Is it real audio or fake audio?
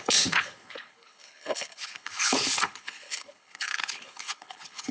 fake